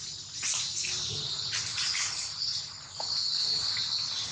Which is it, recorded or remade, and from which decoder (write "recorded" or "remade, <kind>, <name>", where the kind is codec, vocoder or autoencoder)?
recorded